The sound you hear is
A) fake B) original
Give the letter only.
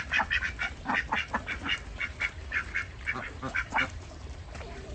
B